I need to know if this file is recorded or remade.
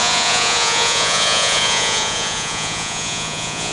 remade